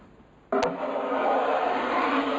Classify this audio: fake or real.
real